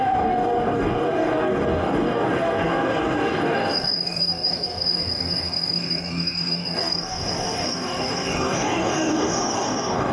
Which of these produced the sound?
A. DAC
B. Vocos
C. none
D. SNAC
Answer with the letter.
A